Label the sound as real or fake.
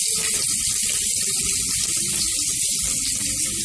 real